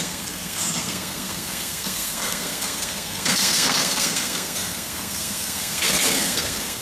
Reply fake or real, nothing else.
fake